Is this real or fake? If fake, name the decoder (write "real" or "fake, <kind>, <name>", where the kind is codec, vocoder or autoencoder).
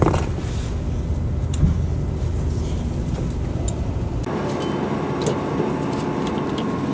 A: real